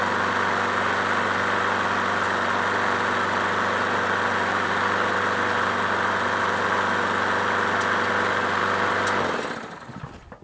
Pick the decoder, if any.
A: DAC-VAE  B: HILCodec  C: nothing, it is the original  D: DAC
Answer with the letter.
C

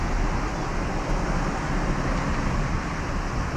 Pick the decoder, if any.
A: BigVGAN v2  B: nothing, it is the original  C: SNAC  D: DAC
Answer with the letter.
B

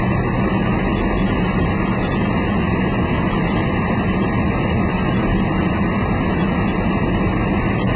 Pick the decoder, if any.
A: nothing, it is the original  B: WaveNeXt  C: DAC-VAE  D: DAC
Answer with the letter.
A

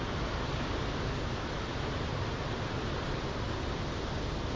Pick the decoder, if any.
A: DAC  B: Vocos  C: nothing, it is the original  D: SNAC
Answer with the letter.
C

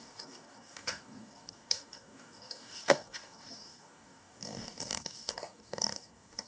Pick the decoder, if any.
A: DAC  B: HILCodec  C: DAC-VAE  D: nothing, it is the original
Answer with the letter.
A